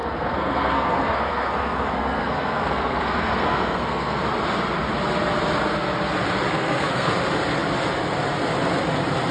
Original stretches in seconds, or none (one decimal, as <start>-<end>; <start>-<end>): 4.2-6.5; 7.1-9.3